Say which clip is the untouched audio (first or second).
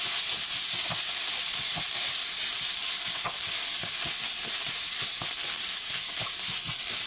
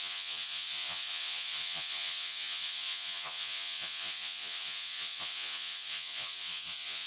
first